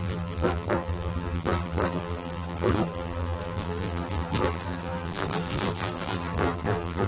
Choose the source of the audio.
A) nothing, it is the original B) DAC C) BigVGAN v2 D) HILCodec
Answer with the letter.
C